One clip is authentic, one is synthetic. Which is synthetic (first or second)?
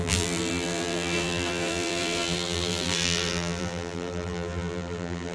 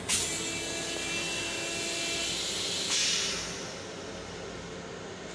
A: first